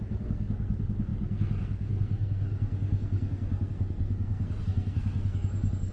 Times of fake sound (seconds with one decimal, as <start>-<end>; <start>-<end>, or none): 0.0-5.9